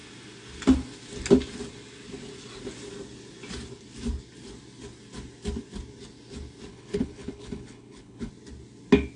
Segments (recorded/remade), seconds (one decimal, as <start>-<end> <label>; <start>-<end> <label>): 0.0-6.7 recorded; 6.7-8.3 remade; 8.3-9.2 recorded